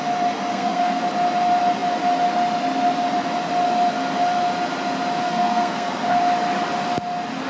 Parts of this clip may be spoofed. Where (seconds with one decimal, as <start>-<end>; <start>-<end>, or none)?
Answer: 0.5-1.0; 5.2-6.2